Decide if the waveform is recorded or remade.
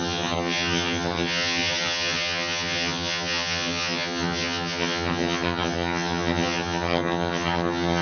remade